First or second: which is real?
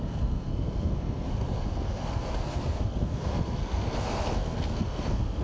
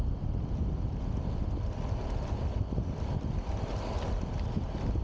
second